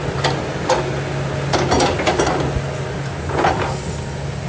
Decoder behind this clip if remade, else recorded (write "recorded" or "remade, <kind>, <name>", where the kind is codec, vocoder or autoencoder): recorded